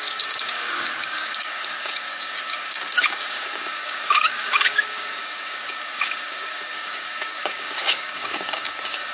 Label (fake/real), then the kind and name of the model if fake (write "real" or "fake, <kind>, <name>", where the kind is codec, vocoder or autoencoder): fake, codec, DAC